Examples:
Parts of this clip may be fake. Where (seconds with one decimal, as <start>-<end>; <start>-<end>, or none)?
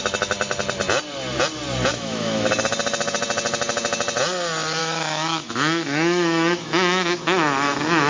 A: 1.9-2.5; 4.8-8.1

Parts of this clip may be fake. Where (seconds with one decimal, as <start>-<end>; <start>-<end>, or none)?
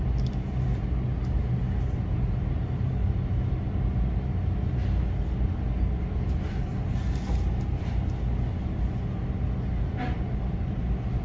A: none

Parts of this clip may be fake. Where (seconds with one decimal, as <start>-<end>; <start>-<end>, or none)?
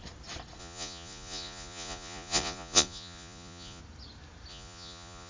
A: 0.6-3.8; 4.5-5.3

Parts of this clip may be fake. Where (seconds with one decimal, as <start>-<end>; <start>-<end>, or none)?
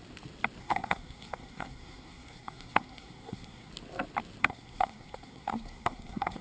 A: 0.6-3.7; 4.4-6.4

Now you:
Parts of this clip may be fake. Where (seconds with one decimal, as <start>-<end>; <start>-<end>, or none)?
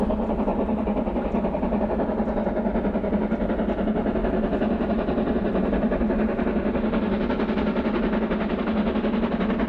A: 0.5-1.8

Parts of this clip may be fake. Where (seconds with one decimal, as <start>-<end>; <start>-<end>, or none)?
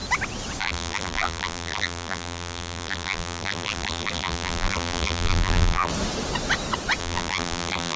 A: 0.6-5.9; 7.0-8.0